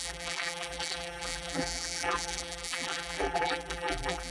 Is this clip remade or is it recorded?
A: remade